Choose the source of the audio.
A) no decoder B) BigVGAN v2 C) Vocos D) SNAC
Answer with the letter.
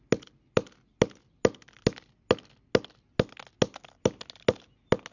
A